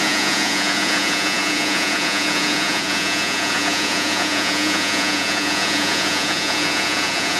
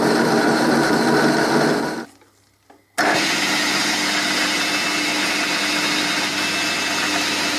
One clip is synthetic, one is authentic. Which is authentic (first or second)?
second